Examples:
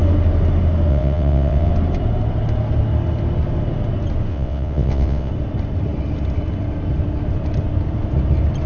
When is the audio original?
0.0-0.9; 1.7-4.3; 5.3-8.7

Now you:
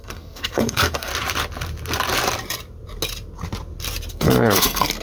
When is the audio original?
1.1-4.1

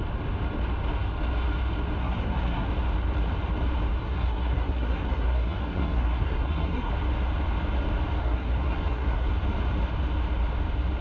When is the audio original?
0.0-2.0; 2.7-4.0; 6.9-8.2; 9.3-11.0

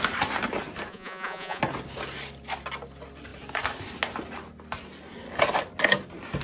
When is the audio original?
0.0-0.9; 1.6-6.4

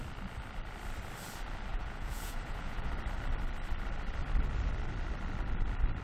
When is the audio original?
0.0-1.7; 2.9-6.0

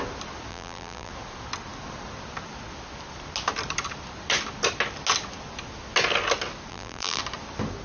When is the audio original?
0.0-0.5; 1.1-6.7; 7.2-7.8